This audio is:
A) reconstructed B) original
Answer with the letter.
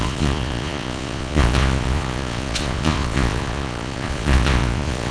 A